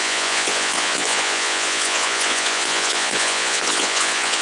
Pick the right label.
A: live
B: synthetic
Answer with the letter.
B